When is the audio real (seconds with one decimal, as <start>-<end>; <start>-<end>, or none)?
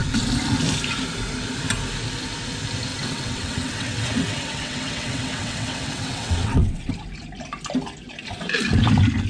0.0-2.9; 6.9-9.3